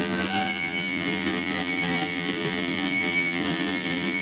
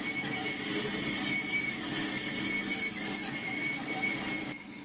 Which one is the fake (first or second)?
first